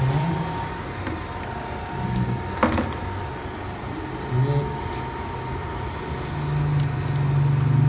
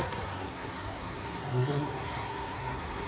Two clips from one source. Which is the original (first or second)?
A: first